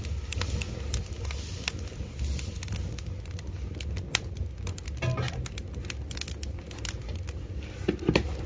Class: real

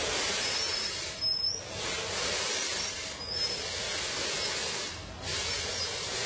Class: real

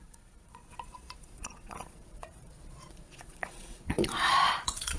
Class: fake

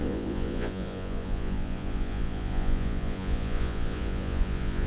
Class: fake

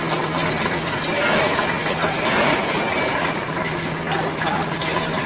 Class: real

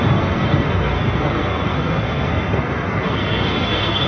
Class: fake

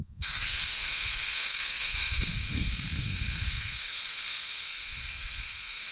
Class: fake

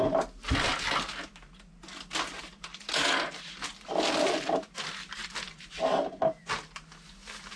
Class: real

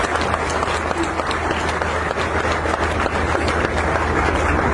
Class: real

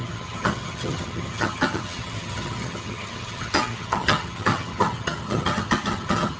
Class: fake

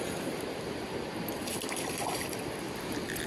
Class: real